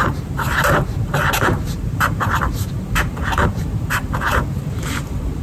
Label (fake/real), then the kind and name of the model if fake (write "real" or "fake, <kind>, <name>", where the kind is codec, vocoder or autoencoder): fake, vocoder, BigVGAN v2